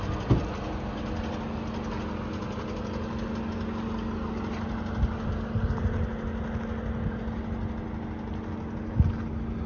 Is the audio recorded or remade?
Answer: recorded